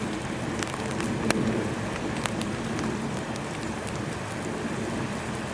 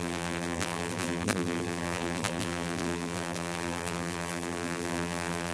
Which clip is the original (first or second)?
first